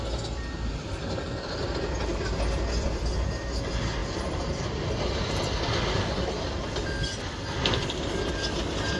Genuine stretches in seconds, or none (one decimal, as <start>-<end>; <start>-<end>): 0.0-9.0